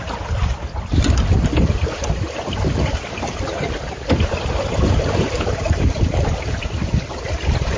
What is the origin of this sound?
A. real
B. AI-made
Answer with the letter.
B